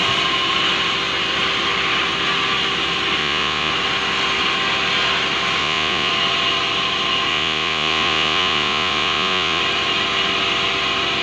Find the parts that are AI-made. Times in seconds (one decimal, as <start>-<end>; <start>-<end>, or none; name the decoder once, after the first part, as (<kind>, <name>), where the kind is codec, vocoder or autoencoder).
3.2-3.7 (vocoder, Vocos); 5.6-6.1; 7.3-9.6